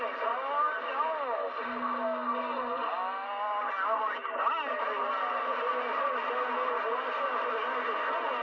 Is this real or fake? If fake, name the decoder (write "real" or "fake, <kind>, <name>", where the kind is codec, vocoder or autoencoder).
real